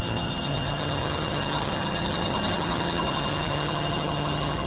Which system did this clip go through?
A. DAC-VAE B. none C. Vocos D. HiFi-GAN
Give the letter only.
D